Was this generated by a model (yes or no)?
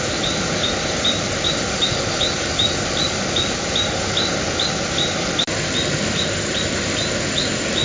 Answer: no